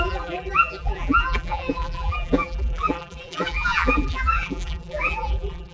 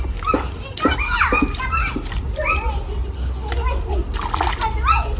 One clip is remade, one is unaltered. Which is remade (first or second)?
first